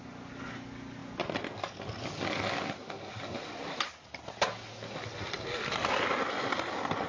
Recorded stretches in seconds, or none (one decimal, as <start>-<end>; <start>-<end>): 0.0-7.1

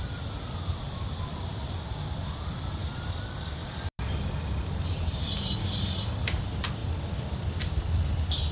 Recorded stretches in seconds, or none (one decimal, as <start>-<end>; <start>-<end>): 3.6-4.8

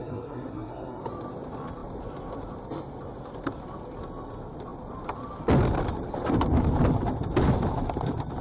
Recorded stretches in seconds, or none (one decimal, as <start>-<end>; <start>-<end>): 1.0-8.4

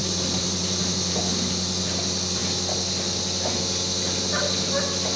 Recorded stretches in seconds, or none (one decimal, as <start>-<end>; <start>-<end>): 1.2-5.2

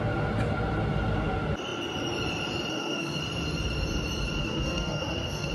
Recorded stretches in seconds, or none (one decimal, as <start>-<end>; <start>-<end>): 0.0-2.7; 3.2-4.4

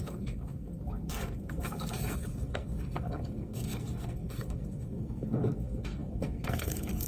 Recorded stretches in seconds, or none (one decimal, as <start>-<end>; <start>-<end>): none